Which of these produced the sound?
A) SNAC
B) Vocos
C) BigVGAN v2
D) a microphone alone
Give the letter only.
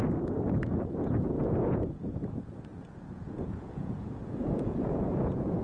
B